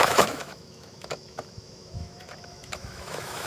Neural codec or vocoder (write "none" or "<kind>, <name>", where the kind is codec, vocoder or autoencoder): autoencoder, DAC-VAE